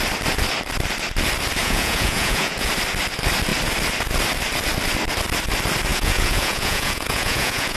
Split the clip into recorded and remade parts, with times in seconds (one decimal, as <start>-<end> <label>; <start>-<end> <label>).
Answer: 0.0-1.6 recorded; 1.6-2.7 remade; 2.7-5.9 recorded; 5.9-7.8 remade